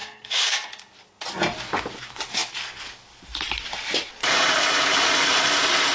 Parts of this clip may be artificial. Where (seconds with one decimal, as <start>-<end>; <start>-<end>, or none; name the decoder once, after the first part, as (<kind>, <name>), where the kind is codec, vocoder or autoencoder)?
0.0-0.5 (codec, DAC)